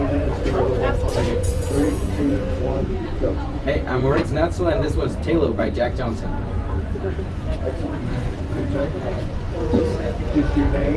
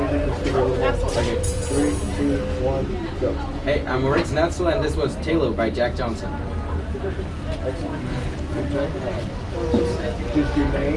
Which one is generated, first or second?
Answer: first